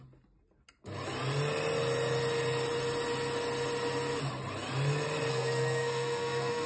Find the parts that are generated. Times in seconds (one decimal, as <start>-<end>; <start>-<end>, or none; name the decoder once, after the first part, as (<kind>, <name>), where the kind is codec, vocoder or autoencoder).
5.3-6.7 (codec, SNAC)